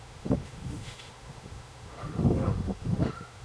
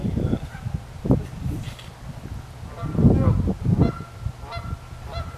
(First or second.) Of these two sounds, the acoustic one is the second